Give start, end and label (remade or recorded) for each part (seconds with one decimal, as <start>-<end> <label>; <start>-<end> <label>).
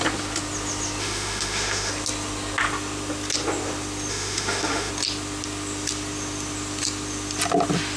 0.0-1.0 recorded; 1.0-1.9 remade; 1.9-4.1 recorded; 4.1-4.9 remade; 4.9-8.0 recorded